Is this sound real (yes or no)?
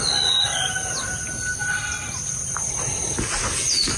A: yes